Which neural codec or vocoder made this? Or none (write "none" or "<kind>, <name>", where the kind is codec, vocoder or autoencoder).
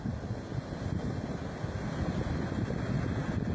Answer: none